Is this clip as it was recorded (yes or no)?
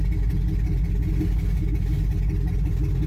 yes